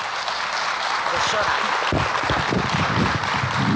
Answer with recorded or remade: recorded